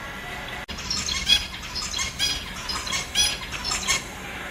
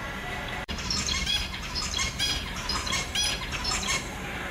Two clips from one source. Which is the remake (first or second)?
second